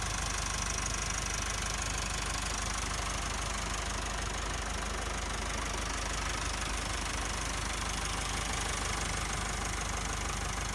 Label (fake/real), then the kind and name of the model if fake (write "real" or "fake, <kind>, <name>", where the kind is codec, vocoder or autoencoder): real